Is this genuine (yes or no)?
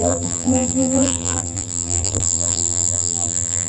no